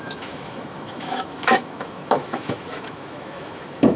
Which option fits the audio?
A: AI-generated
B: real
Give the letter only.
A